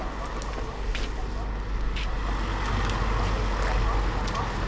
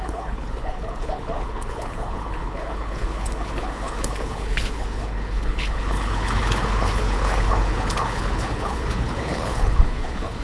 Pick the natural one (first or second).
first